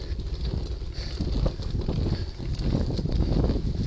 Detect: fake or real real